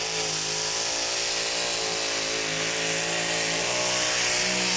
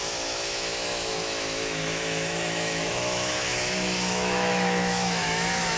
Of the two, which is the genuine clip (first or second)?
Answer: first